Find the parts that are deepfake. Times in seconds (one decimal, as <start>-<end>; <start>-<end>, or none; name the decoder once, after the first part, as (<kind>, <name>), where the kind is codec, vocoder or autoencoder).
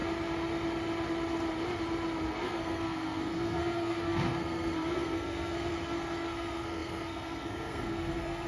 2.3-8.5 (codec, SNAC)